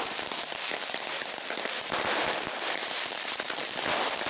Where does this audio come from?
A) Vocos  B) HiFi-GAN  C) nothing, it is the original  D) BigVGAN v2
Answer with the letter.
C